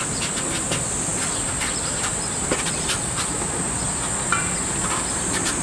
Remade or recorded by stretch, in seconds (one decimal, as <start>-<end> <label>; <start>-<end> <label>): 0.0-5.6 recorded

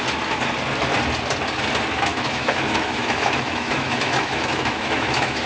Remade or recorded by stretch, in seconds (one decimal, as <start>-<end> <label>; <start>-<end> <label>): 0.0-2.1 recorded; 2.1-5.5 remade

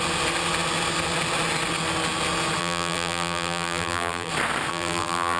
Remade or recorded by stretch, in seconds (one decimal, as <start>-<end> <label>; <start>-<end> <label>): 0.0-2.6 recorded; 2.6-4.3 remade; 4.3-4.7 recorded; 4.7-5.4 remade

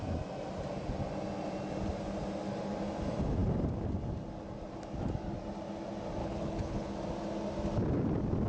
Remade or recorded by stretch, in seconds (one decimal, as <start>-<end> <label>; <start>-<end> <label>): 0.0-6.2 recorded; 6.2-6.9 remade; 6.9-8.5 recorded

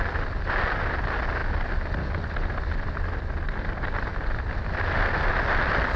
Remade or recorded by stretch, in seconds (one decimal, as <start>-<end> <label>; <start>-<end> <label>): 0.0-4.1 recorded; 4.1-5.3 remade; 5.3-6.0 recorded